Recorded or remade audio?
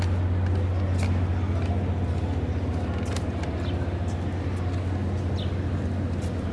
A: recorded